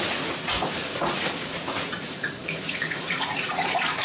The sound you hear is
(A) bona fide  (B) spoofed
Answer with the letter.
B